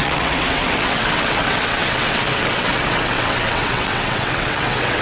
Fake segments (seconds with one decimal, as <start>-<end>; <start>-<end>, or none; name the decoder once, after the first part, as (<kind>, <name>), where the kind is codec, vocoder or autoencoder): 0.0-5.0 (vocoder, WaveNeXt)